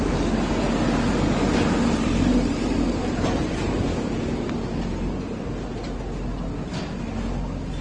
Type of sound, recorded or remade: recorded